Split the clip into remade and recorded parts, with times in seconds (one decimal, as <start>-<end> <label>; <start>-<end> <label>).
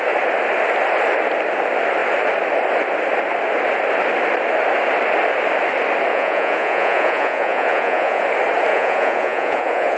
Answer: 0.0-6.1 recorded; 6.1-8.2 remade; 8.2-8.7 recorded; 8.7-10.0 remade